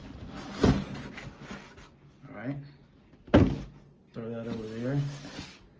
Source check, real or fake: real